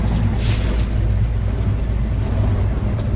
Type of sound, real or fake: real